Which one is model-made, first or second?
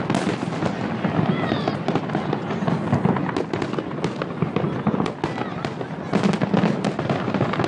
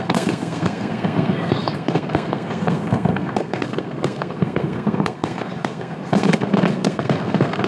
second